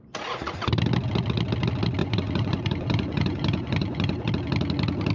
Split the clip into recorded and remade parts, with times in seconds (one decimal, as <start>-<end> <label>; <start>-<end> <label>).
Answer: 0.0-2.0 recorded; 2.0-4.3 remade; 4.3-5.1 recorded